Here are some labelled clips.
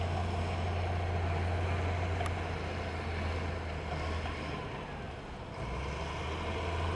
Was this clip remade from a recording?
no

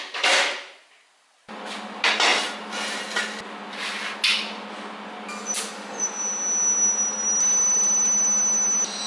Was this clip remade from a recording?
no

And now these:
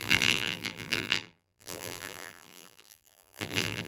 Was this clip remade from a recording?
yes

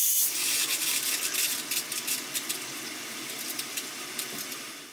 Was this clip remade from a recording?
yes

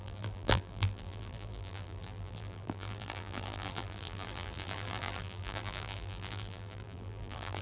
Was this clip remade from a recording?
yes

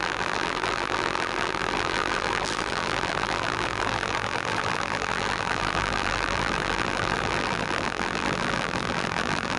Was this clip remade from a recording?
yes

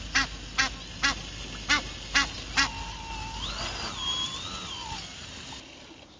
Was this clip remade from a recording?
no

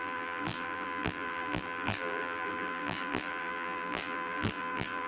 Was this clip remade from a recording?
yes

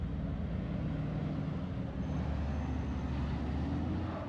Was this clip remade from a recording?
no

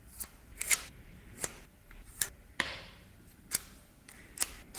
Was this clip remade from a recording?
yes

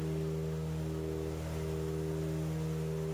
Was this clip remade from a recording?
no